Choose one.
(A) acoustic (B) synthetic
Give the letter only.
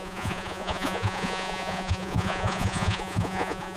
B